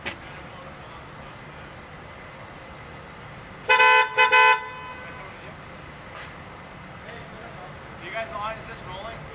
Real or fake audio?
real